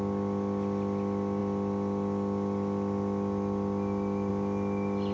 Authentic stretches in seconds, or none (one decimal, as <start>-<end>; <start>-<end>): 0.0-5.1